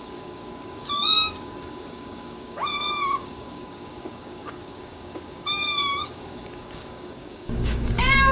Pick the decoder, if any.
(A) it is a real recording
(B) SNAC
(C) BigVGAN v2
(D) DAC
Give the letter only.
D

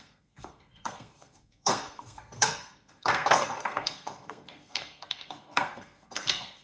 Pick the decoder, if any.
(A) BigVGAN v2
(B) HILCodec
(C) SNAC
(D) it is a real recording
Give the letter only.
C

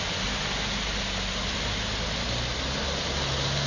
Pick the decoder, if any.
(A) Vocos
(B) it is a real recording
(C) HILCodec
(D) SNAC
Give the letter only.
B